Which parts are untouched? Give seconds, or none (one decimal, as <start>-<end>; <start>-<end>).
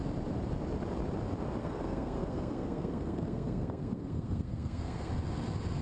0.0-1.6; 5.1-5.8